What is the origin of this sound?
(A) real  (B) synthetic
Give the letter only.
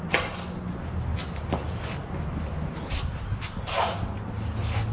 A